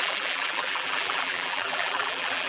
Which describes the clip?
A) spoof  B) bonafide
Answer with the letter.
A